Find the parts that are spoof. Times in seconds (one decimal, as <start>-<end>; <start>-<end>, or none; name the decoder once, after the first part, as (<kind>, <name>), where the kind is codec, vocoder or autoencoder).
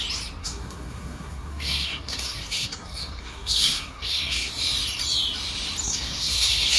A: 0.4-4.5 (codec, SNAC); 5.8-6.8